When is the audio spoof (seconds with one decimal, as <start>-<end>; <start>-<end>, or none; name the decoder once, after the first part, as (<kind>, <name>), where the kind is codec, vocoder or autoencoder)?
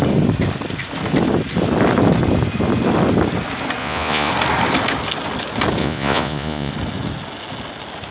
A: 3.8-4.3 (vocoder, Vocos); 5.8-6.7